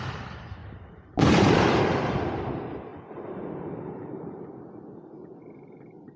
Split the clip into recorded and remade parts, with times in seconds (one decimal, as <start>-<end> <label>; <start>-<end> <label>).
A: 0.0-0.6 recorded; 0.6-1.8 remade; 1.8-6.2 recorded